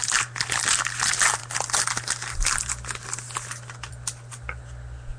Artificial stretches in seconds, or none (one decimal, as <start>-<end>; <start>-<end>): none